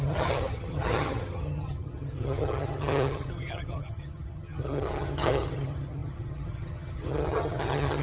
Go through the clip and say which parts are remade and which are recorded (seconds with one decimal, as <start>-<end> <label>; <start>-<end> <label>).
0.0-8.0 remade